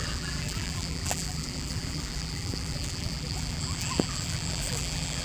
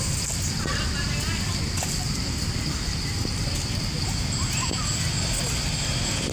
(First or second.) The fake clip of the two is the first